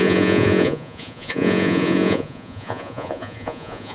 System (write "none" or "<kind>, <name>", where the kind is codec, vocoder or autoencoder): vocoder, Vocos